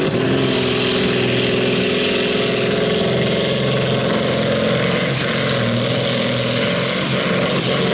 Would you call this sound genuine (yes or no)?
yes